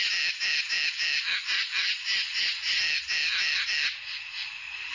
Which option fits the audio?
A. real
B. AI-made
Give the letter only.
A